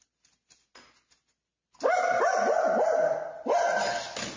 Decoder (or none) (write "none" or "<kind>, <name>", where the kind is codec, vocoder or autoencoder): none